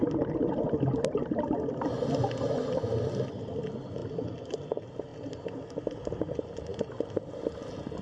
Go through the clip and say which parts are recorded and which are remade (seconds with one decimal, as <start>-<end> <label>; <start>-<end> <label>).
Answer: 0.0-8.0 recorded